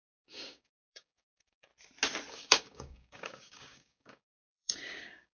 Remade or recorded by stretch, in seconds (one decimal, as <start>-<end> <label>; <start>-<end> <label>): 0.0-1.7 remade; 1.7-2.3 recorded; 2.3-5.3 remade